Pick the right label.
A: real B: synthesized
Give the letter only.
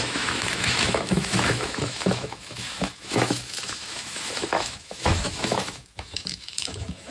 B